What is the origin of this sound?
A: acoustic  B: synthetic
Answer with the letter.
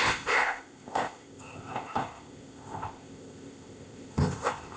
B